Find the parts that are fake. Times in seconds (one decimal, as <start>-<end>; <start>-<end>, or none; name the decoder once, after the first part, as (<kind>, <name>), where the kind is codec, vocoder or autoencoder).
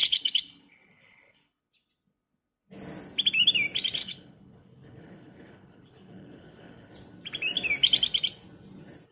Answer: 0.0-1.6 (codec, HILCodec); 4.0-6.9